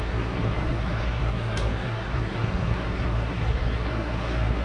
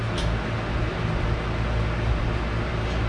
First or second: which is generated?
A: first